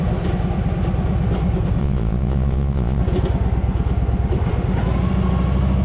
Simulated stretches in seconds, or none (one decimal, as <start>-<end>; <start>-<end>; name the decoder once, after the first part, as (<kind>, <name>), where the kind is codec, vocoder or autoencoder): 1.8-3.0 (vocoder, Vocos)